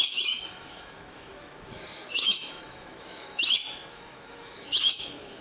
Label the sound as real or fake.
fake